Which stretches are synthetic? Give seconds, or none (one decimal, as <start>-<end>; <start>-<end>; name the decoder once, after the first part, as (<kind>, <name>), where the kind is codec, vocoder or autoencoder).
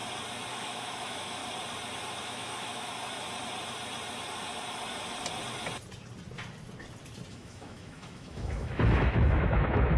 0.5-1.4 (autoencoder, DAC-VAE); 2.2-2.9; 7.3-10.0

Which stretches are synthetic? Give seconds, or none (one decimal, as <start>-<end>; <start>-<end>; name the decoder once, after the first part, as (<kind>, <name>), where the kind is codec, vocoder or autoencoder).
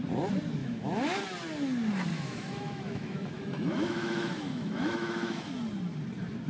0.6-1.2 (autoencoder, DAC-VAE); 2.1-5.5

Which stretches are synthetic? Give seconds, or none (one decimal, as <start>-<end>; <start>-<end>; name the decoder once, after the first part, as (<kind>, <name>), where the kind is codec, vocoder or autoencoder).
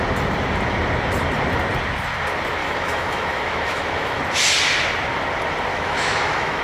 2.6-4.2 (autoencoder, DAC-VAE); 5.7-6.6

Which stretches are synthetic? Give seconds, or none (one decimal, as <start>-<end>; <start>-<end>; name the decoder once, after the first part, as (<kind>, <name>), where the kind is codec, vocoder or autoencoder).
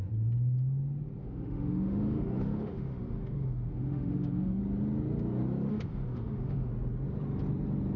1.2-4.6 (autoencoder, DAC-VAE); 5.7-6.7